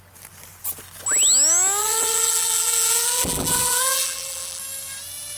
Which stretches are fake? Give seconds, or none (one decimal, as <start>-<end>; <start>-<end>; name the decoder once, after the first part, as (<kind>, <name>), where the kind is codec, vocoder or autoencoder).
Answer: 1.8-4.6 (vocoder, BigVGAN v2)